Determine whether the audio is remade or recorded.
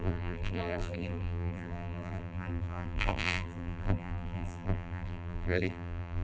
remade